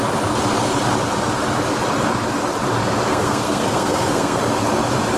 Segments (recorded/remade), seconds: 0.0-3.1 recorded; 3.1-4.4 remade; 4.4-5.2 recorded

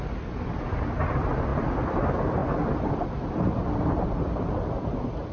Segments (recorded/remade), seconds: 0.0-1.5 recorded; 1.5-2.0 remade; 2.0-5.3 recorded